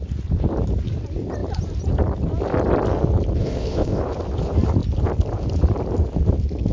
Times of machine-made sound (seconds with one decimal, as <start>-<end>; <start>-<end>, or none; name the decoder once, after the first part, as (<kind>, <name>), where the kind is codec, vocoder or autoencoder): 3.4-4.0 (codec, ZipCodec)